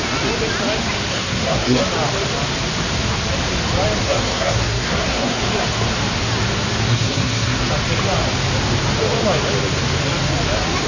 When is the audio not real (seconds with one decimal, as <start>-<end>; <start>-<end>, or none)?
1.1-1.8; 4.0-5.4; 6.9-7.7